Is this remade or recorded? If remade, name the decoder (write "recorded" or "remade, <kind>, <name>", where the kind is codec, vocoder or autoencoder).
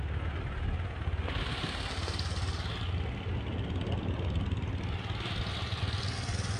recorded